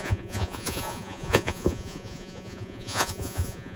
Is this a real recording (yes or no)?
no